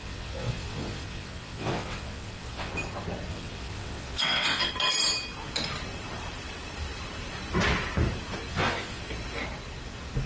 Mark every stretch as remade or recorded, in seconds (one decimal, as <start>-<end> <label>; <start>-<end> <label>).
0.0-2.7 remade; 2.7-3.3 recorded; 3.3-4.7 remade; 4.7-8.5 recorded; 8.5-9.0 remade; 9.0-10.3 recorded